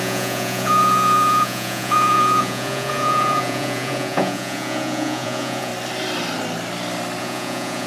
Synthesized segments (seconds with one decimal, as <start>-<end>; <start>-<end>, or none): 0.0-5.7; 7.2-7.9